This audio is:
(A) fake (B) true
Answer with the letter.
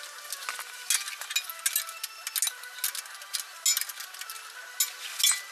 B